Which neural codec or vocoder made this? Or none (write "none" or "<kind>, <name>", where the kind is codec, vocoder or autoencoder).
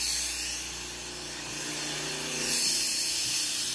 none